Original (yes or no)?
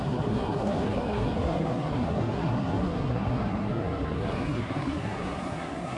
no